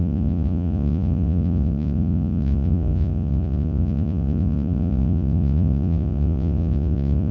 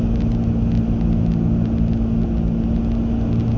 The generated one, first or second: first